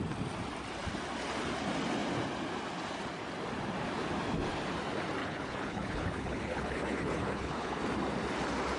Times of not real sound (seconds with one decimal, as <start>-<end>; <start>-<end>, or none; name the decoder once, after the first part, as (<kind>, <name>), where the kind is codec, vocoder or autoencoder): 5.2-7.8 (codec, HILCodec)